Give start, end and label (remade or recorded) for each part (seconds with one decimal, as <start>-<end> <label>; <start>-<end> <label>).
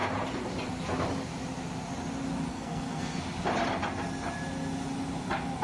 0.0-2.5 recorded; 2.5-3.2 remade; 3.2-5.6 recorded